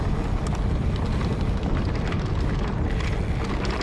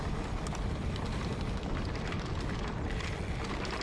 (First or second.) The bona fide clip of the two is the first